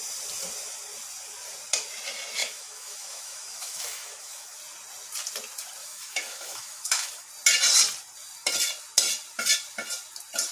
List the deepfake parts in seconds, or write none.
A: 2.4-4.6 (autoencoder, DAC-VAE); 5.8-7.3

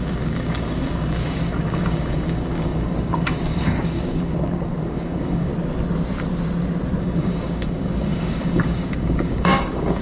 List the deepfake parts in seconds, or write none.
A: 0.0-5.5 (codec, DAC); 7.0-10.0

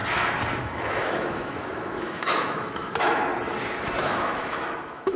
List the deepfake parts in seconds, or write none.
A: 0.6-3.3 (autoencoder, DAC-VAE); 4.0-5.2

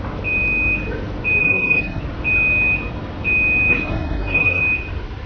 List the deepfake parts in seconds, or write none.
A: 1.4-2.0 (codec, SNAC); 3.7-4.6